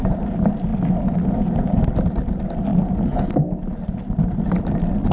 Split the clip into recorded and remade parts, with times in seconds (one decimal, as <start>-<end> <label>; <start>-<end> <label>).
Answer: 0.0-5.1 recorded